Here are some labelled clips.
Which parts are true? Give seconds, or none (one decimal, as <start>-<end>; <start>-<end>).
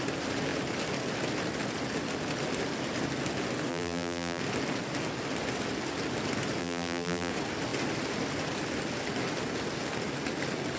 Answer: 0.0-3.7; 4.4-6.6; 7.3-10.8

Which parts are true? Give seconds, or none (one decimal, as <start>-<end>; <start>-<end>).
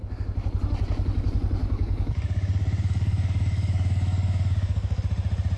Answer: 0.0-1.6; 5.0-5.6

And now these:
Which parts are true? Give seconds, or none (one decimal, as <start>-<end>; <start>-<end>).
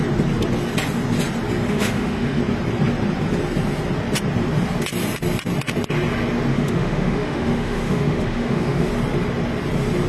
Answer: 0.0-1.7; 2.4-6.5; 8.9-10.1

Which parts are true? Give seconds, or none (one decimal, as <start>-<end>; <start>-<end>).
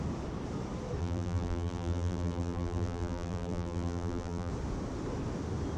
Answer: 0.0-1.0; 4.5-5.8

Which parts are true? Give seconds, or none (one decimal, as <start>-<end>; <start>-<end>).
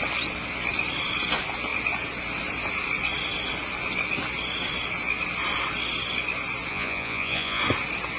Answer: 0.0-6.7; 7.6-8.2